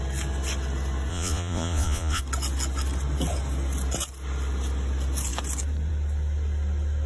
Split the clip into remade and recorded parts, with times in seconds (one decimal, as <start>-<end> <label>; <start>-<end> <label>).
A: 0.0-1.1 recorded; 1.1-2.2 remade; 2.2-7.1 recorded